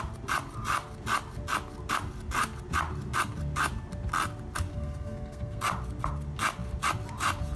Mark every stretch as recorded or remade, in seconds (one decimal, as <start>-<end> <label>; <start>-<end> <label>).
0.0-4.7 recorded; 4.7-5.6 remade; 5.6-7.6 recorded